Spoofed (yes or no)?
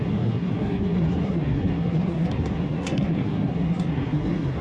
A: yes